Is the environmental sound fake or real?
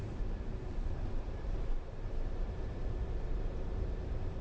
fake